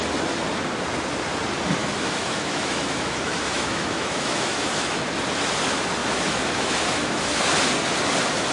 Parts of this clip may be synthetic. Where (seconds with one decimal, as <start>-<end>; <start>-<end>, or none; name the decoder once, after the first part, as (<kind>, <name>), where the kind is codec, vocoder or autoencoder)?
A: 1.8-5.0 (autoencoder, DAC-VAE); 6.0-7.6